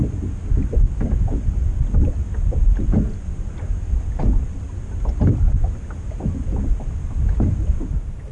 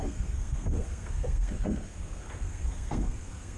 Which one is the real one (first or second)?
first